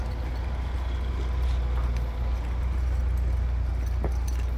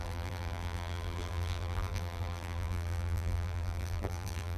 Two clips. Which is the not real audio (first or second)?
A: second